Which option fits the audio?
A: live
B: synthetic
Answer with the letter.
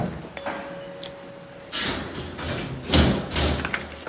A